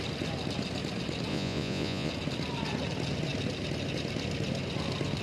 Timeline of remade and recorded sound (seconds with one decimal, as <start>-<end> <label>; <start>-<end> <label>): 0.0-1.3 recorded; 1.3-2.1 remade; 2.1-5.2 recorded